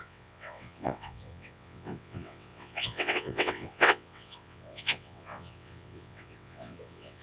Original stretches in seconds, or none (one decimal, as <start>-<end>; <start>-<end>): none